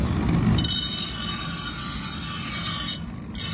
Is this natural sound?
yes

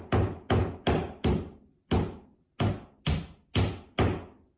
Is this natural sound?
yes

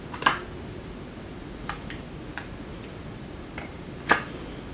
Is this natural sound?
yes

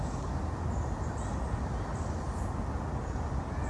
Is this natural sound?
yes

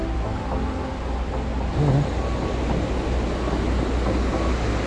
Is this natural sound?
yes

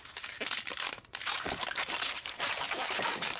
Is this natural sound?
no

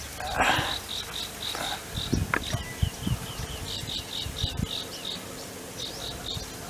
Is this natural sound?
yes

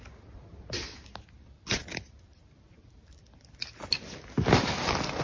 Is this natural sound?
yes